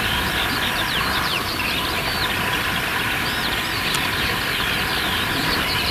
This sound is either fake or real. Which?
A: fake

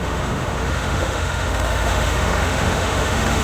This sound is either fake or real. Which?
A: fake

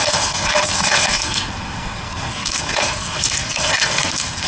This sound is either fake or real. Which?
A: fake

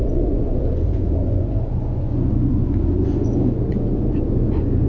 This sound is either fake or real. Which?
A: fake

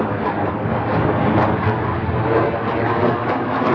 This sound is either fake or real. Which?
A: fake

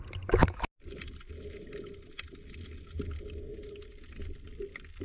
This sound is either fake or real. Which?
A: real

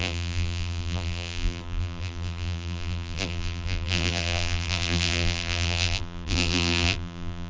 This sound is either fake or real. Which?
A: fake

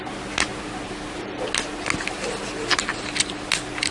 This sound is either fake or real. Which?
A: real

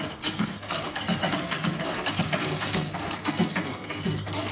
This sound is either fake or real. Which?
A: fake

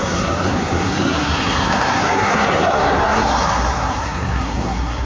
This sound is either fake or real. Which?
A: fake